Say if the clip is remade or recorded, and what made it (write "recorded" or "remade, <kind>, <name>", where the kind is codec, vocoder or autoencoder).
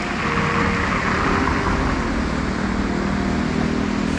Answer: recorded